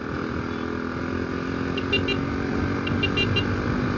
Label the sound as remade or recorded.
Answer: recorded